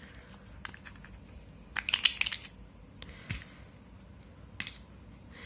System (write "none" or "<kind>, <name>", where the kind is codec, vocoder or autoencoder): none